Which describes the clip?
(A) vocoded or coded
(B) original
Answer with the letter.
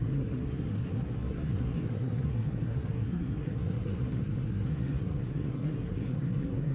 A